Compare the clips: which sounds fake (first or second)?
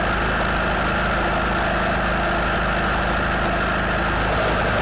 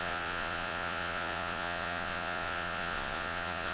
second